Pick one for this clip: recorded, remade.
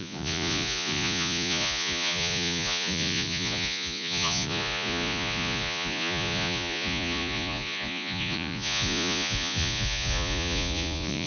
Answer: remade